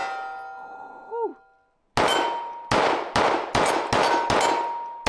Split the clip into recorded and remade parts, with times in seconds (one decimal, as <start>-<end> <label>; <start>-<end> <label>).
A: 0.0-5.1 recorded